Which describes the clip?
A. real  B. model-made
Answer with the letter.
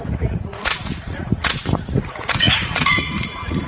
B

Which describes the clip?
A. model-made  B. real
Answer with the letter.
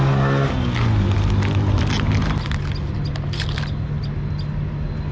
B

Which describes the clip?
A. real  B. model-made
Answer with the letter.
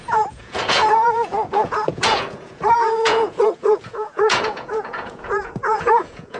B